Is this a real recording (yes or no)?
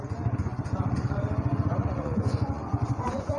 no